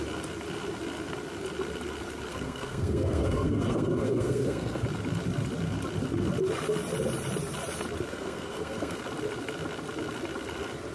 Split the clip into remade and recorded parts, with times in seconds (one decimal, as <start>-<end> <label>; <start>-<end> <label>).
0.0-2.3 recorded; 2.3-4.8 remade; 4.8-8.1 recorded; 8.1-9.0 remade; 9.0-10.9 recorded